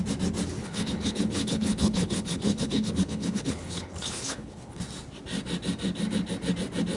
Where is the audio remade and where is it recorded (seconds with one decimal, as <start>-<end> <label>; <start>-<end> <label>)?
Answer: 0.0-0.6 recorded; 0.6-4.8 remade; 4.8-7.0 recorded